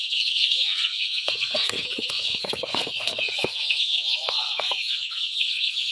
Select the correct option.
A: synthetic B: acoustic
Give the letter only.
A